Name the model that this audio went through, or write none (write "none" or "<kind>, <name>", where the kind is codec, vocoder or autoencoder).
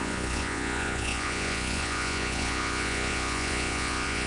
vocoder, Vocos